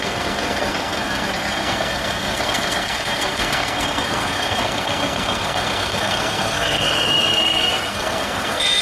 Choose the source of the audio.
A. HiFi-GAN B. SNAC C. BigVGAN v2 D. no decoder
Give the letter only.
B